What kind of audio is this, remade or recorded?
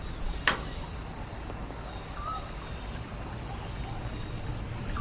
recorded